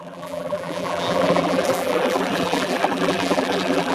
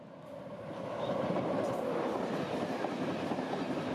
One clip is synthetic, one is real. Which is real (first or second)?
second